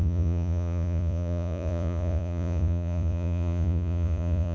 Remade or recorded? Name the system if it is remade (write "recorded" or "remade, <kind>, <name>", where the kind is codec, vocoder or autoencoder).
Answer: remade, vocoder, Vocos